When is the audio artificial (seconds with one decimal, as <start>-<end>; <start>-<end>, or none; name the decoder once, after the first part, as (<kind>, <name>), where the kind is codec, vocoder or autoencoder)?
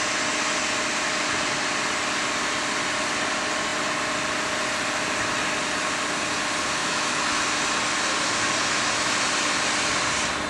6.8-7.4 (autoencoder, DAC-VAE)